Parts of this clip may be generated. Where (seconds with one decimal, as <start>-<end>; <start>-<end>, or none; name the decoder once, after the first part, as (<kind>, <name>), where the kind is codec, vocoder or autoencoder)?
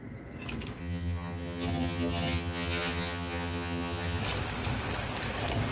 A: 0.8-4.2 (vocoder, HiFi-GAN)